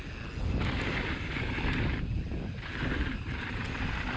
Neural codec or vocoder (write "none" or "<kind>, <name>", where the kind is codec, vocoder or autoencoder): none